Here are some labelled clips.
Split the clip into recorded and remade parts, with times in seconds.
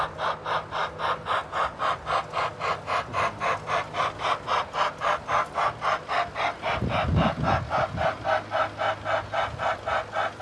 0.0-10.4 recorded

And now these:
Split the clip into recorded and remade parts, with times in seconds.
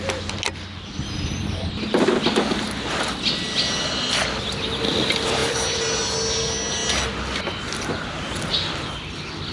0.0-9.5 recorded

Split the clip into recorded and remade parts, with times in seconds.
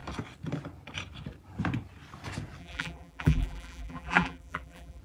0.0-2.6 recorded; 2.6-5.0 remade